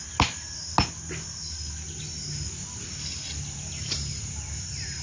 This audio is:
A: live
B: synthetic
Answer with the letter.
A